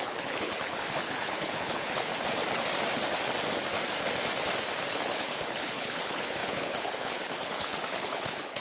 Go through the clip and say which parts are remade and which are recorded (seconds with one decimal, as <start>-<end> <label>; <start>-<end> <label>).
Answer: 0.0-2.1 remade; 2.1-4.9 recorded; 4.9-8.6 remade